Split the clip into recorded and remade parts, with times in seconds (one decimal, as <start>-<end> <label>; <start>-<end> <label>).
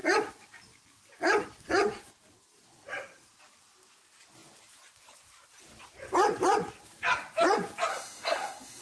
0.0-7.9 recorded; 7.9-8.8 remade